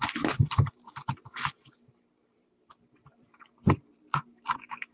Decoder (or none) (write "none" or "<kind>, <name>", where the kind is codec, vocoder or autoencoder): vocoder, BigVGAN v2